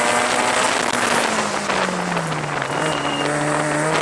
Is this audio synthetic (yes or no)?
no